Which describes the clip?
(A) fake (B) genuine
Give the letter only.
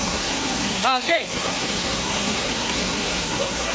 A